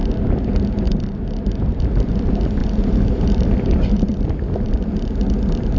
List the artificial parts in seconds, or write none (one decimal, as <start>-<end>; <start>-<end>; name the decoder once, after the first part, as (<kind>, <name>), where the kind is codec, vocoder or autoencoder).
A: 2.6-4.7 (vocoder, BigVGAN v2)